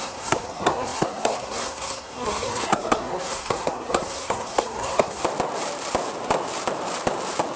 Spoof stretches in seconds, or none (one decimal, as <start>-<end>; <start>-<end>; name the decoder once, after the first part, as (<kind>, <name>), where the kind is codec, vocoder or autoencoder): 0.0-5.2 (codec, SNAC)